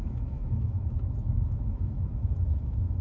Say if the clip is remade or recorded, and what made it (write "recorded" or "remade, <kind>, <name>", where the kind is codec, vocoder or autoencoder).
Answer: remade, autoencoder, DAC-VAE